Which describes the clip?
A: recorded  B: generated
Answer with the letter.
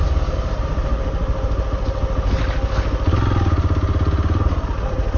A